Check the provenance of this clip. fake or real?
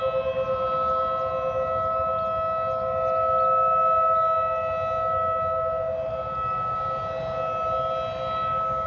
real